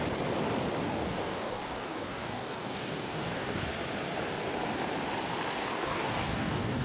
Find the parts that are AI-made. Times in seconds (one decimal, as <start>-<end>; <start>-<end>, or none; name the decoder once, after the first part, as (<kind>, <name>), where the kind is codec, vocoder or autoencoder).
0.8-3.7 (codec, DAC); 5.7-6.8